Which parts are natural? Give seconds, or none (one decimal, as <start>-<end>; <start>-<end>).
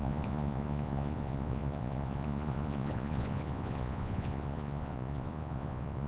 none